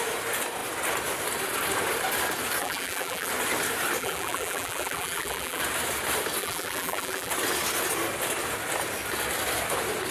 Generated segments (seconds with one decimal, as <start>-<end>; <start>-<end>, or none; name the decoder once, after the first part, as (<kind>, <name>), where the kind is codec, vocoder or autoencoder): 2.6-3.3 (vocoder, BigVGAN v2); 4.0-5.6; 6.4-7.3